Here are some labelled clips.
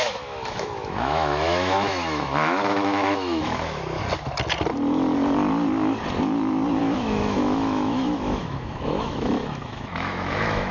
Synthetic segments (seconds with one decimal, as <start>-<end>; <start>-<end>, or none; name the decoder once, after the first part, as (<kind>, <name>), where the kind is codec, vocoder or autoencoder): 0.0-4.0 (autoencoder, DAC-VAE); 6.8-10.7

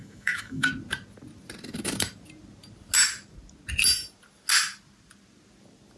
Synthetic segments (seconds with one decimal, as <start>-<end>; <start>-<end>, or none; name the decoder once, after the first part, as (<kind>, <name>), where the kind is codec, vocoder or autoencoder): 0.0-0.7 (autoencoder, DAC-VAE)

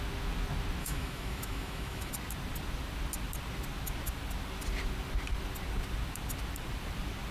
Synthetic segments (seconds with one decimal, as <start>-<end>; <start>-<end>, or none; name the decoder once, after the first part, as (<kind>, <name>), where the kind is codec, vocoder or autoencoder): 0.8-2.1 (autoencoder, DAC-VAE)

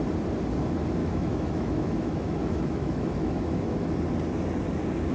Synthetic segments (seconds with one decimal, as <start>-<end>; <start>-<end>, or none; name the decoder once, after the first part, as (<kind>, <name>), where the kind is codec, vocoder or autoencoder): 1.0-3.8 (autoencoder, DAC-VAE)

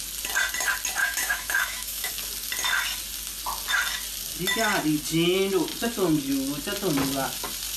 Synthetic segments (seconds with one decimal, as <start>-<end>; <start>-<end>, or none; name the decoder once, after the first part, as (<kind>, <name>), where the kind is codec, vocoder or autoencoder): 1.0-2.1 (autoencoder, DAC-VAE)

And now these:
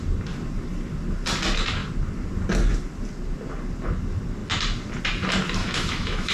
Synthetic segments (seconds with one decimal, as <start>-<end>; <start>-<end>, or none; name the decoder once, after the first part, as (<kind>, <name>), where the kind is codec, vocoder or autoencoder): 5.6-6.3 (autoencoder, DAC-VAE)

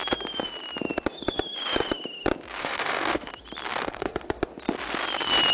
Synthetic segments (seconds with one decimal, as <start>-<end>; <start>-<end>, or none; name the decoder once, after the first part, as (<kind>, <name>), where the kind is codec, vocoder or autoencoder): 2.6-3.3 (autoencoder, DAC-VAE); 3.7-4.4

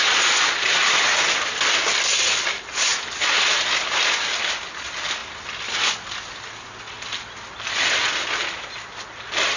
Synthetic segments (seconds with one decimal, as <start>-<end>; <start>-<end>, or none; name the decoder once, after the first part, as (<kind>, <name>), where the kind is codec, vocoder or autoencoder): none